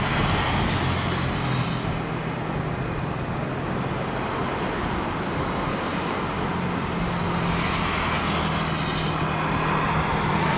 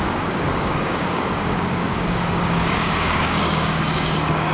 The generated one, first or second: second